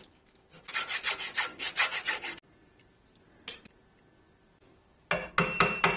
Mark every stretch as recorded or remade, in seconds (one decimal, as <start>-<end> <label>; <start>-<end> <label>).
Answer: 0.0-6.0 recorded